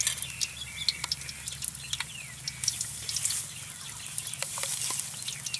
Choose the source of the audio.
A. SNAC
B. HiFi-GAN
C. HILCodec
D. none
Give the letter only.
D